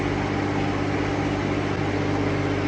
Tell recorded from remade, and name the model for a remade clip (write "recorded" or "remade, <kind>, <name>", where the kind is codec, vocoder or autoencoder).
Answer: recorded